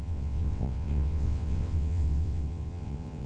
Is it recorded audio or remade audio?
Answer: remade